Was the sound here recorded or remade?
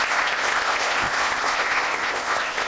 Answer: remade